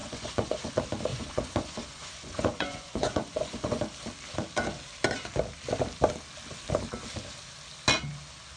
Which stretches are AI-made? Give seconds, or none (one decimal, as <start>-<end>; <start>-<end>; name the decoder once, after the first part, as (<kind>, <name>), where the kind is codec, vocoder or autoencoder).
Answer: 0.0-0.7 (vocoder, Vocos); 1.1-3.8